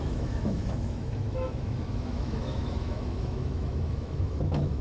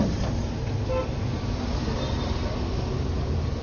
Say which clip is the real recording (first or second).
second